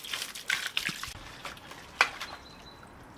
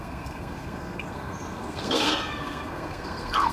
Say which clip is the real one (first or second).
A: first